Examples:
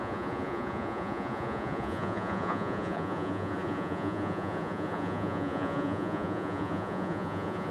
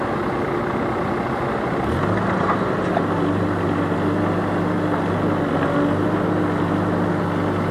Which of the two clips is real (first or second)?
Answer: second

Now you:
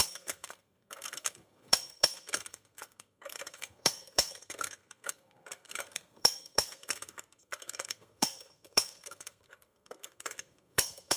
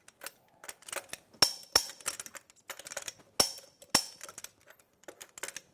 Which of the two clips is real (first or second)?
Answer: second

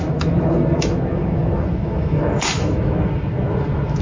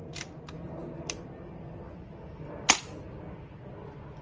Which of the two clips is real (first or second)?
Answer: second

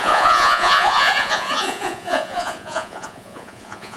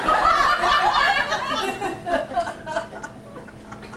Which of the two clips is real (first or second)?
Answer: second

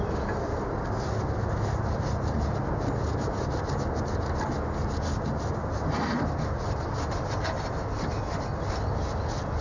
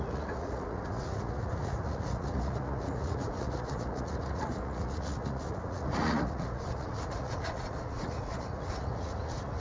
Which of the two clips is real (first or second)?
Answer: first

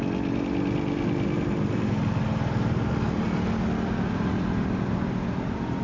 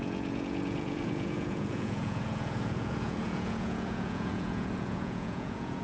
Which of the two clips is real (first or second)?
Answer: first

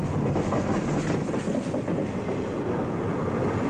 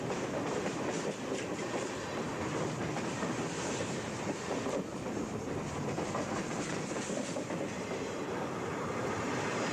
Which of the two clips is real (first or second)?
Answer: first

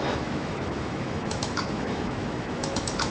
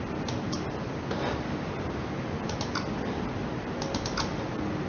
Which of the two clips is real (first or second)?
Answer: second